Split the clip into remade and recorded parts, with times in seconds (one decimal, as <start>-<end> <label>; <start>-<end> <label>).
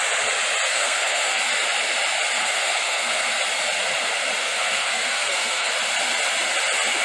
0.0-0.7 recorded; 0.7-1.4 remade; 1.4-2.4 recorded; 2.4-3.3 remade; 3.3-4.4 recorded; 4.4-5.7 remade; 5.7-7.0 recorded